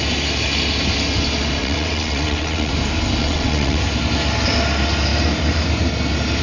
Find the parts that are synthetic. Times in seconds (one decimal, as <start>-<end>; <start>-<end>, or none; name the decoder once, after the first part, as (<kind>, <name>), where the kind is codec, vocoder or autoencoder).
1.6-2.7 (vocoder, WaveNeXt); 3.2-3.8